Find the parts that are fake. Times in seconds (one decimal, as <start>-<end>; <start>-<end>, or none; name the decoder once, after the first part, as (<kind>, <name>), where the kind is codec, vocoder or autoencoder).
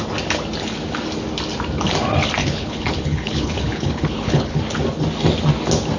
2.4-4.6 (codec, HILCodec)